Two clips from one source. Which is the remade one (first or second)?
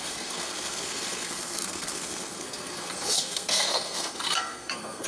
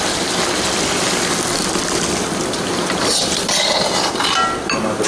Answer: first